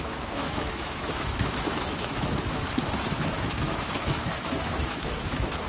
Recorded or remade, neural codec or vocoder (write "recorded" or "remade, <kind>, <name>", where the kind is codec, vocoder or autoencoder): remade, autoencoder, DAC-VAE